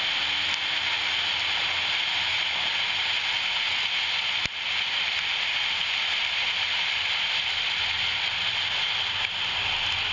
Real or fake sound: real